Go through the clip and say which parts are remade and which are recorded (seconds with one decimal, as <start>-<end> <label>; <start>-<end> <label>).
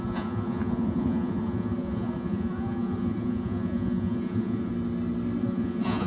0.0-4.7 remade; 4.7-5.4 recorded; 5.4-6.1 remade